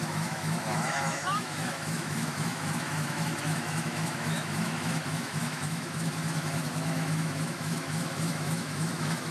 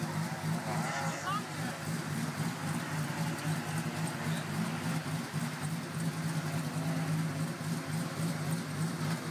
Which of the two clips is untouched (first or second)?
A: second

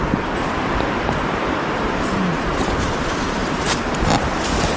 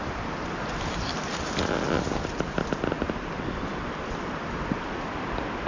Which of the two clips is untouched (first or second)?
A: second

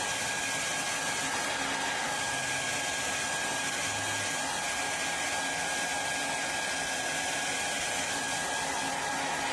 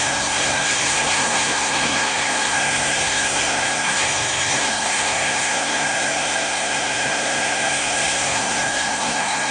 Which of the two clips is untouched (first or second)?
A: first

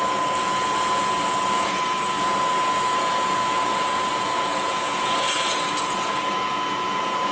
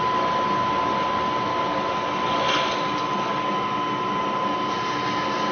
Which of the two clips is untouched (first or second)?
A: second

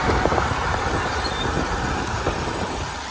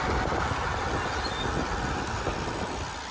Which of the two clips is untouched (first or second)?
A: second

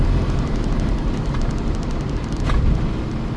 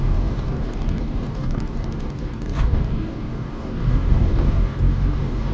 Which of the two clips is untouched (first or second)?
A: first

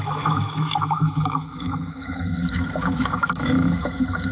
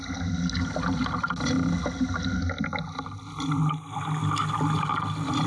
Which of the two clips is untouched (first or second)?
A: second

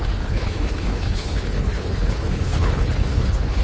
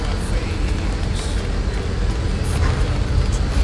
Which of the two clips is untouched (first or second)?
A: second